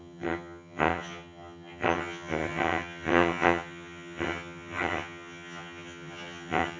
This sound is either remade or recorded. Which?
remade